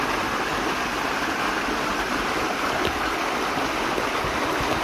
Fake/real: real